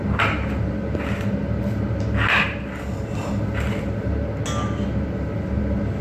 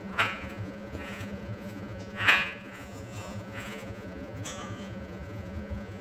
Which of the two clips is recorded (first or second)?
first